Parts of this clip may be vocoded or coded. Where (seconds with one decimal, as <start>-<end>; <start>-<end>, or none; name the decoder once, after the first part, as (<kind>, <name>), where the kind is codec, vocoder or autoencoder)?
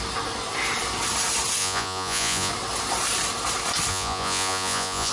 1.6-2.5 (vocoder, Vocos); 3.9-5.1